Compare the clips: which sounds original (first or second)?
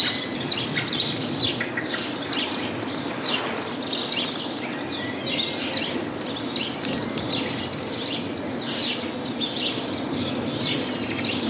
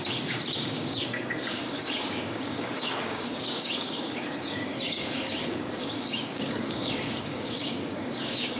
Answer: first